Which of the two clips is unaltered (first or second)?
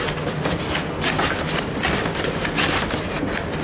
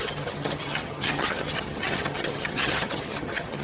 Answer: first